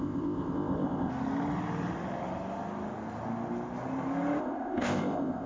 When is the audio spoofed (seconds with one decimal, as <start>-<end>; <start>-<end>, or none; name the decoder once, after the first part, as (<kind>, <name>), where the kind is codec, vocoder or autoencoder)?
0.0-1.1 (codec, ZipCodec); 4.4-5.5